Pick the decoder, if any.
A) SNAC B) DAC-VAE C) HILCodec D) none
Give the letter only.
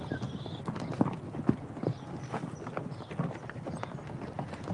D